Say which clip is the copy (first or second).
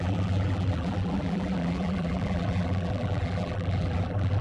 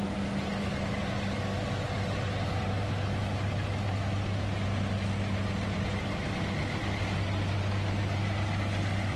first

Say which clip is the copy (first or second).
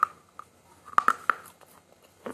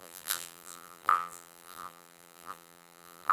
second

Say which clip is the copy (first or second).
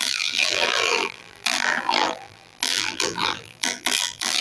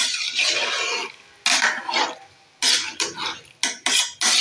first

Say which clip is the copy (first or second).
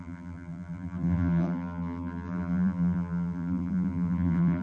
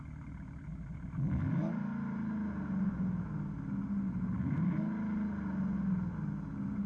first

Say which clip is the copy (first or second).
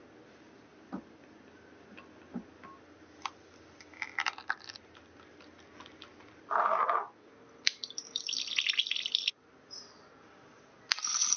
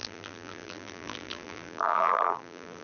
second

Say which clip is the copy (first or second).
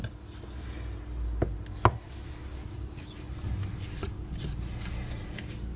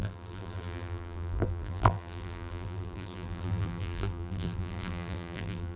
second